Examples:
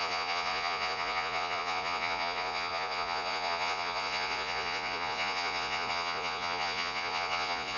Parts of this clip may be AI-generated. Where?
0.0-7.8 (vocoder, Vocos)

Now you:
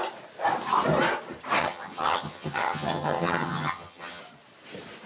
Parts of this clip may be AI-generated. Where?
1.6-4.2 (vocoder, HiFi-GAN)

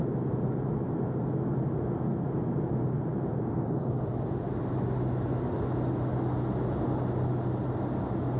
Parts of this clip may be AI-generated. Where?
3.3-4.5 (vocoder, BigVGAN v2)

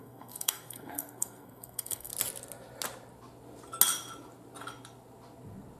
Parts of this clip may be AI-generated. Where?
0.0-2.1 (codec, SNAC)